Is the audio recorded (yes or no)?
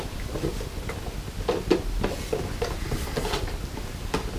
yes